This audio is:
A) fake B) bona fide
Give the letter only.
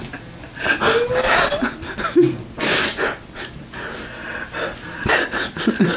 B